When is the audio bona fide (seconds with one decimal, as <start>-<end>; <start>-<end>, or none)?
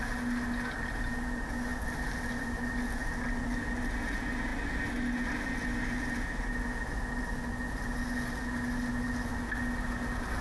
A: 0.0-10.4